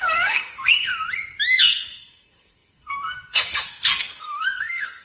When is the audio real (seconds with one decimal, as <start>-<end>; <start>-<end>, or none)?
0.9-1.6